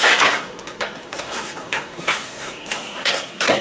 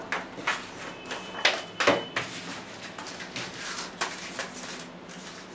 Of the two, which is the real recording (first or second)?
second